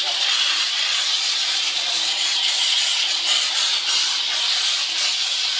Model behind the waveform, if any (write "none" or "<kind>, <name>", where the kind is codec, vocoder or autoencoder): none